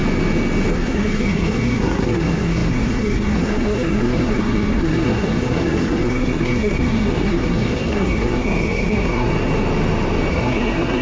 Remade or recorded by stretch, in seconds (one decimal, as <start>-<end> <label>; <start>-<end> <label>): 0.0-0.7 recorded; 0.7-9.3 remade; 9.3-10.3 recorded; 10.3-11.0 remade